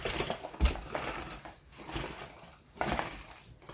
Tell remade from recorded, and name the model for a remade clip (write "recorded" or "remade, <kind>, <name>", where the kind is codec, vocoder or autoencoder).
recorded